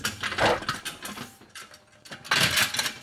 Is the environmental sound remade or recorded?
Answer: recorded